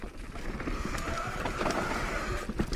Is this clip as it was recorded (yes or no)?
yes